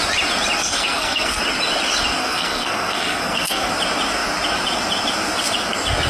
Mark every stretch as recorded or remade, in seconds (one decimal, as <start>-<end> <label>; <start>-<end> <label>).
0.0-0.6 recorded; 0.6-1.4 remade; 1.4-2.2 recorded; 2.2-3.7 remade; 3.7-6.1 recorded